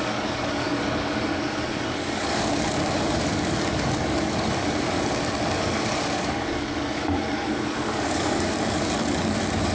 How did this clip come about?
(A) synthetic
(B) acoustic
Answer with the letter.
A